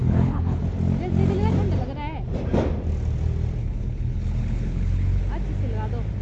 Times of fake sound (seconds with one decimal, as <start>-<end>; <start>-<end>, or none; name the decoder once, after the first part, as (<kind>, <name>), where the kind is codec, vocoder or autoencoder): 0.0-0.6 (codec, HILCodec); 3.6-5.2